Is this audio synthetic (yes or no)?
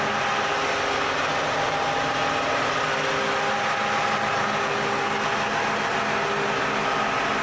no